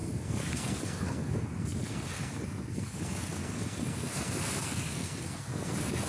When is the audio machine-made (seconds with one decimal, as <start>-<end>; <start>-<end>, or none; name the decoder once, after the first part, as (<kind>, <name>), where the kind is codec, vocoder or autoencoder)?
0.0-6.1 (codec, SNAC)